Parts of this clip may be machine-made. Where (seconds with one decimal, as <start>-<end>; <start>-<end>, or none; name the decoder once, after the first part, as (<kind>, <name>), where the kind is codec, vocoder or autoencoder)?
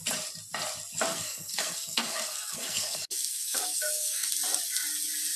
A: 1.1-4.3 (codec, SNAC)